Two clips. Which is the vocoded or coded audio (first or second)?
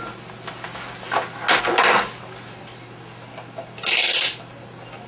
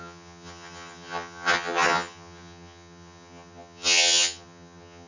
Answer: second